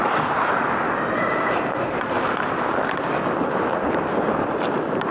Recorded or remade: recorded